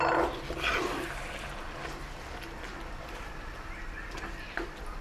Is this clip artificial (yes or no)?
no